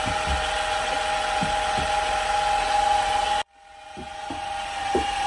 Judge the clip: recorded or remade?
recorded